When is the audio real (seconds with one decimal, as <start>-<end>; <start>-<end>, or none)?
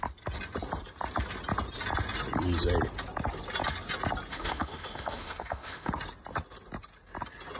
0.0-4.3; 5.9-7.6